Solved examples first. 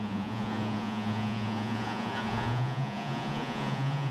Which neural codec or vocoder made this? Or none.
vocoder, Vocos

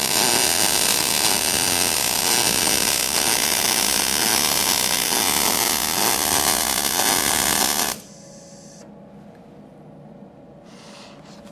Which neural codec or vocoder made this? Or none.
none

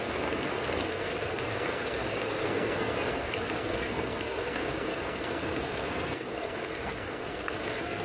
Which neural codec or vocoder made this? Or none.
codec, SNAC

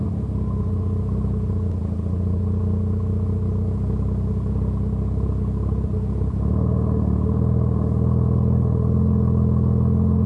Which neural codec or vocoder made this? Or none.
none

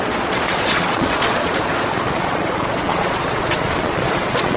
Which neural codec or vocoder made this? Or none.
vocoder, Vocos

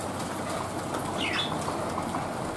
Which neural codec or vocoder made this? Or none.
none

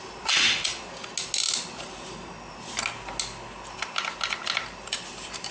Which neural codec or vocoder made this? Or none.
none